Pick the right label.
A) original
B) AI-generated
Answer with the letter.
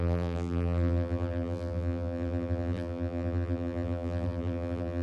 B